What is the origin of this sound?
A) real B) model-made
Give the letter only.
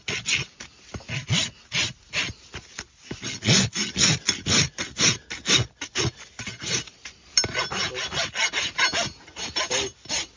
A